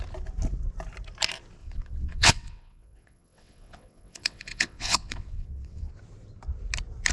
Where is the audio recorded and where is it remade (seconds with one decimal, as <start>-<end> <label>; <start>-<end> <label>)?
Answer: 0.0-1.6 recorded; 1.6-5.9 remade; 5.9-7.1 recorded